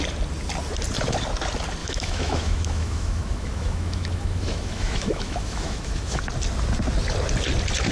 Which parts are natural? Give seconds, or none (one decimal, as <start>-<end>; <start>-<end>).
0.0-1.8; 6.2-7.9